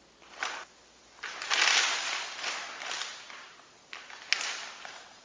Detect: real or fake real